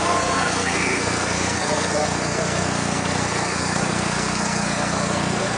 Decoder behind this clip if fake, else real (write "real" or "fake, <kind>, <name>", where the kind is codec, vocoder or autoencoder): fake, codec, SNAC